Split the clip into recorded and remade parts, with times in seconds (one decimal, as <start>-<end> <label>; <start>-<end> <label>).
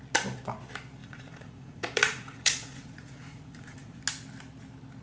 0.0-1.0 recorded; 1.0-4.0 remade; 4.0-5.0 recorded